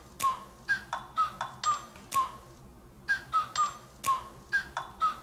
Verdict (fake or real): real